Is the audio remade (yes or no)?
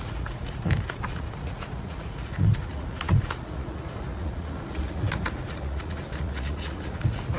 yes